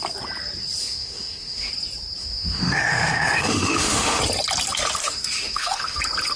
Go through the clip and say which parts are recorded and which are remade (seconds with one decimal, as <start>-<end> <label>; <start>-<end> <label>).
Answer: 0.0-0.8 recorded; 0.8-1.7 remade; 1.7-2.2 recorded; 2.2-4.2 remade; 4.2-5.0 recorded; 5.0-6.0 remade; 6.0-6.4 recorded